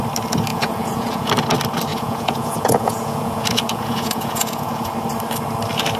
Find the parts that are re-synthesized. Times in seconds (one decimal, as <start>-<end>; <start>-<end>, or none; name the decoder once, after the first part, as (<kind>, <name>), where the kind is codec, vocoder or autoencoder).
0.5-1.3 (vocoder, Vocos); 1.9-4.9

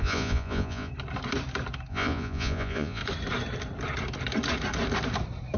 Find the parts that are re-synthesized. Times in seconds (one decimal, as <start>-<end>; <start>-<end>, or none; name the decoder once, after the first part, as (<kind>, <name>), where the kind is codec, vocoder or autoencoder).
0.0-0.9 (vocoder, Vocos); 1.9-3.0

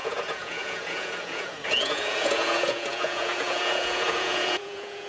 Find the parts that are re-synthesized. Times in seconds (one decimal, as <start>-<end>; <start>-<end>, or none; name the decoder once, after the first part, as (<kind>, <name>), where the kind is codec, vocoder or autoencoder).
0.0-5.1 (vocoder, Vocos)

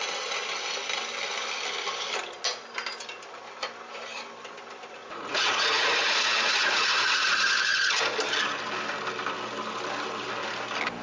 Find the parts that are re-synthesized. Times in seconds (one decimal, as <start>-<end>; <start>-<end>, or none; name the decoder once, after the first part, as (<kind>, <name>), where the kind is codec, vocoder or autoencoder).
5.0-7.9 (vocoder, Vocos)